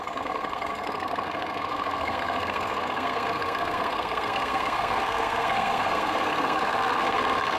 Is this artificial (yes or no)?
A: yes